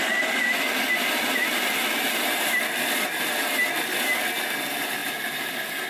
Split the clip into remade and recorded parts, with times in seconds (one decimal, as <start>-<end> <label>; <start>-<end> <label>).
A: 0.0-5.0 recorded; 5.0-5.5 remade; 5.5-5.9 recorded